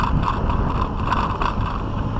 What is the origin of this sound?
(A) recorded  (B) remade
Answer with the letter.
A